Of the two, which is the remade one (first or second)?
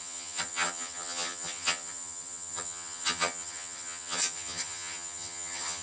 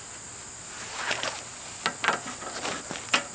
first